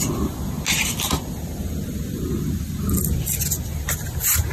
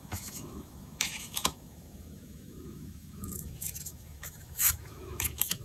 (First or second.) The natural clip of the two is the first